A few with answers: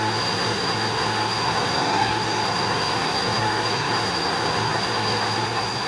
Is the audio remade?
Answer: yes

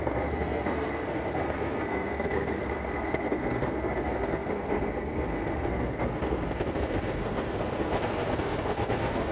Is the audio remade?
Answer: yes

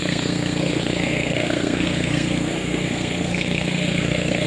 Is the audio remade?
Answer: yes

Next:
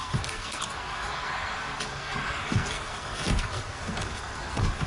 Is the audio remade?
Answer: yes